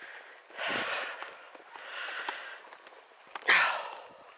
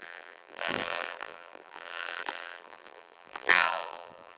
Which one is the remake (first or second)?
second